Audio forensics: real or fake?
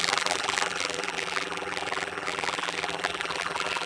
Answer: fake